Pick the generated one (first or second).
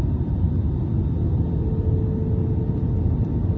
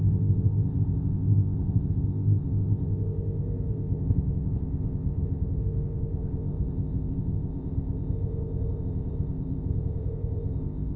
second